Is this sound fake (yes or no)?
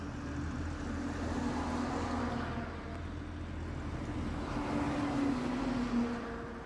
no